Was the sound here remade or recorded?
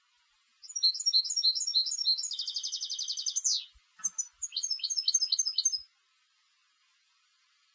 recorded